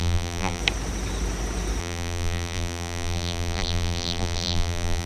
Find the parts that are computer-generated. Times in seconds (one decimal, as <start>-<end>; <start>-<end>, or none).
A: 0.0-0.6; 1.8-5.1